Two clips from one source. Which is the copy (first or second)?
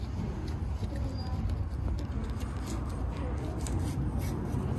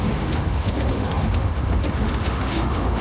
second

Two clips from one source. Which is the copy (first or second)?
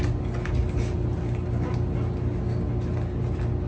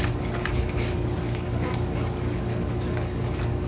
second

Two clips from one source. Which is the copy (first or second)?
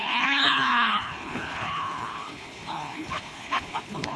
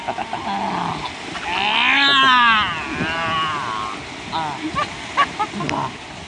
first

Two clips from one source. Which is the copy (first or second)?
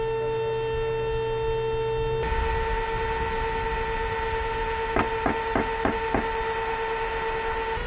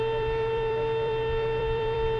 second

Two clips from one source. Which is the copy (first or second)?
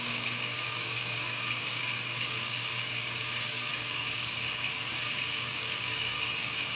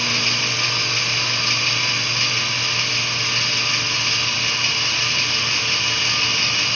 first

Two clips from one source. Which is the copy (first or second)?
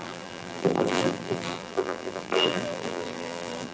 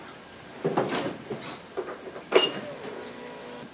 first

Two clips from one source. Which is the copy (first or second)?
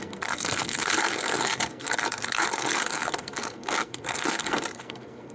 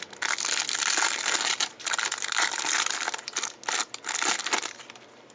first